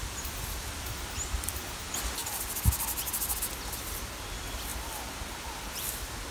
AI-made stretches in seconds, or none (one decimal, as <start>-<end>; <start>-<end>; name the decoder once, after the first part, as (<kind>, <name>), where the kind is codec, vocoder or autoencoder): none